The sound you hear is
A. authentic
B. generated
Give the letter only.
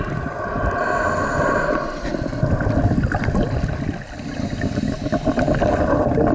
A